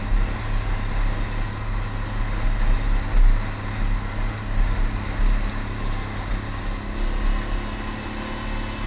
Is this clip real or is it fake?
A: real